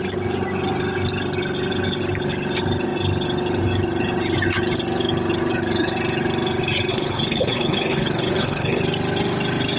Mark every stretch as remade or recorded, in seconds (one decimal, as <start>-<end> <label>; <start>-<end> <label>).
0.0-6.9 recorded; 6.9-8.8 remade; 8.8-9.8 recorded